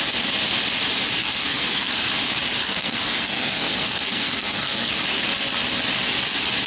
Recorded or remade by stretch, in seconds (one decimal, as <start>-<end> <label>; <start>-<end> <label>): 0.0-1.2 recorded; 1.2-2.0 remade; 2.0-2.6 recorded; 2.6-4.9 remade; 4.9-6.7 recorded